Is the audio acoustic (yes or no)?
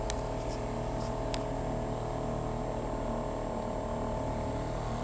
yes